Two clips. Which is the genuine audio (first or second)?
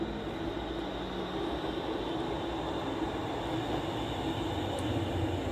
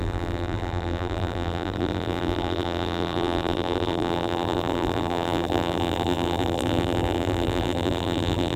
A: first